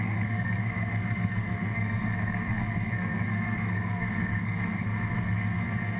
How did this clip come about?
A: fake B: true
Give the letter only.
A